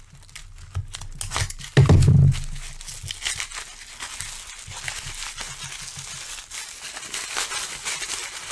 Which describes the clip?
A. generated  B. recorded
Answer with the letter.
B